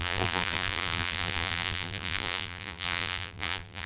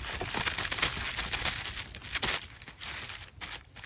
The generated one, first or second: first